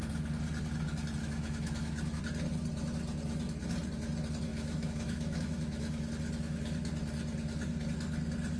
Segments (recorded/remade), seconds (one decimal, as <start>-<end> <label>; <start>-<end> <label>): 0.0-1.2 recorded; 1.2-2.2 remade; 2.2-4.5 recorded; 4.5-6.1 remade; 6.1-8.6 recorded